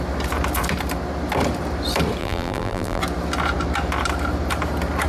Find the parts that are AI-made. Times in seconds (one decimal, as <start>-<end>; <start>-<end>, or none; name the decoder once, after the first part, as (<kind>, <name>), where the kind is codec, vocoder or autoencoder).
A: 2.2-3.0 (vocoder, BigVGAN v2)